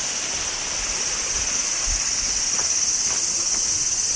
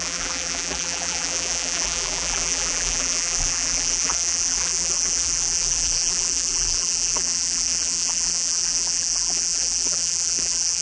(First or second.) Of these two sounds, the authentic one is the first